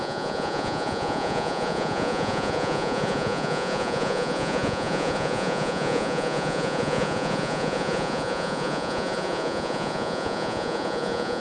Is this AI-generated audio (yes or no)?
yes